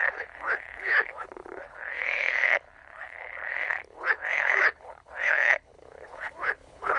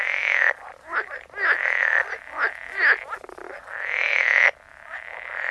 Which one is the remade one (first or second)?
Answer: first